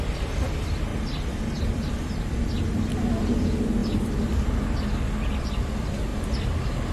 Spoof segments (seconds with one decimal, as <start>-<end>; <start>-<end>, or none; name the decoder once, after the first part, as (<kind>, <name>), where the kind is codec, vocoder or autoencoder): 0.9-1.9 (vocoder, BigVGAN v2)